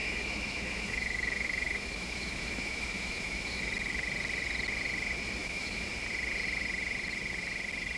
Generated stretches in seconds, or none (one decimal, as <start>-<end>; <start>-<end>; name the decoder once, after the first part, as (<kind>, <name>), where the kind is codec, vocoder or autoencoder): 0.0-3.7 (autoencoder, DAC-VAE); 5.4-5.9

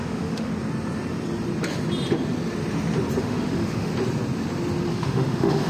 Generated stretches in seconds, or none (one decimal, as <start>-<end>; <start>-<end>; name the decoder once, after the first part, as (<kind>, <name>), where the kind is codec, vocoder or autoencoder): 0.0-0.5 (autoencoder, DAC-VAE); 3.2-3.9; 4.9-5.7

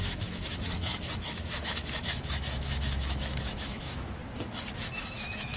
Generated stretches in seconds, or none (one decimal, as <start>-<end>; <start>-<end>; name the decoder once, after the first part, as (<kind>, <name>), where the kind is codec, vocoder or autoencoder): 0.0-4.2 (autoencoder, DAC-VAE); 4.8-5.6

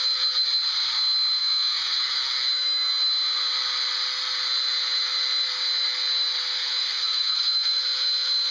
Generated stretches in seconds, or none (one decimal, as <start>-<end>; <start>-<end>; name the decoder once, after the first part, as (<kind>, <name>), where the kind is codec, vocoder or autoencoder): 1.4-3.0 (autoencoder, DAC-VAE); 6.6-7.8

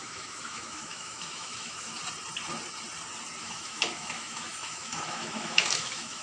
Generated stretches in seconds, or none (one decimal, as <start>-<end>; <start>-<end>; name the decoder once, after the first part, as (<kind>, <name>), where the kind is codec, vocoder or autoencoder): 0.0-2.0 (autoencoder, DAC-VAE); 3.4-6.2

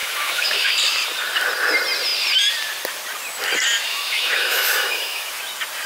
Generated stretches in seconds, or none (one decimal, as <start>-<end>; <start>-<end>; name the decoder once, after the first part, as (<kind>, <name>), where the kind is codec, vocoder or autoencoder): 0.0-0.7 (autoencoder, DAC-VAE); 3.9-5.4

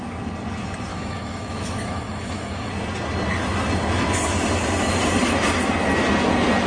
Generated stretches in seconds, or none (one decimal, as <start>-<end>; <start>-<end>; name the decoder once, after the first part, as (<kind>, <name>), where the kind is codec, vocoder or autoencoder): 0.9-2.7 (autoencoder, DAC-VAE)